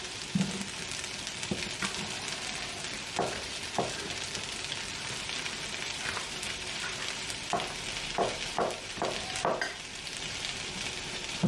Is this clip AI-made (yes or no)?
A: yes